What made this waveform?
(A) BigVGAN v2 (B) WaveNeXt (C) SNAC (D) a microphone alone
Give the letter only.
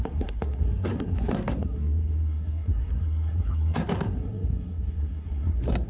C